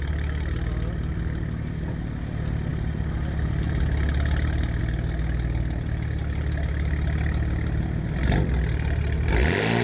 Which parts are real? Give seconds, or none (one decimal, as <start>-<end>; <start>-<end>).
0.0-9.8